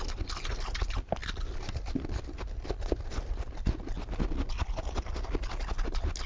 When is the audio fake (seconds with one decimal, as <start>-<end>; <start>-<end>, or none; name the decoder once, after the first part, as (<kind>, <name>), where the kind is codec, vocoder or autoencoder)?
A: none